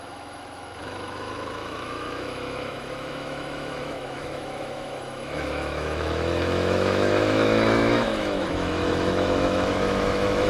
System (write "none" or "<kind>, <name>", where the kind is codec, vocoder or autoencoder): autoencoder, DAC-VAE